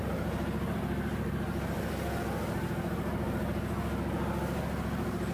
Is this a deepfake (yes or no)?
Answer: no